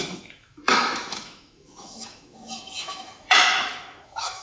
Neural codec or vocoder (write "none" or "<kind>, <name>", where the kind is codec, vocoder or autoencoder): autoencoder, DAC-VAE